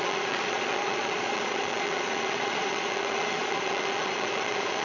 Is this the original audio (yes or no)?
no